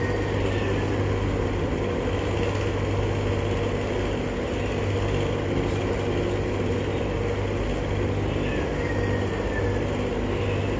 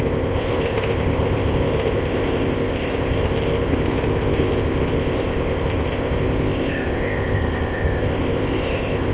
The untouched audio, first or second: first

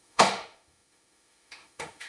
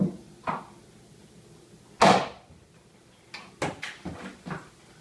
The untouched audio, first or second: second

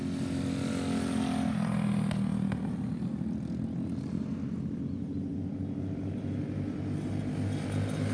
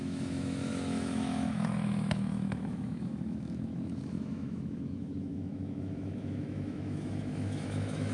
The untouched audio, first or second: first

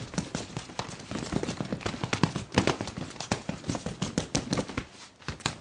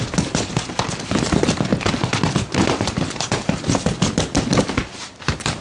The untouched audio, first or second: first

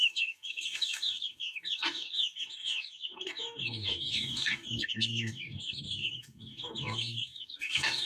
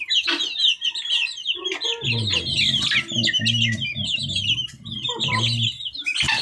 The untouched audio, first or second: second